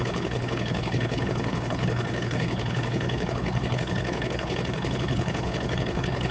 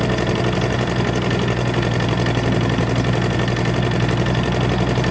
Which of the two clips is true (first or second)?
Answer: second